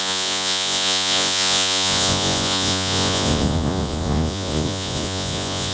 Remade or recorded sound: remade